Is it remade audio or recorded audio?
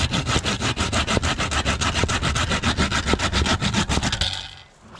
recorded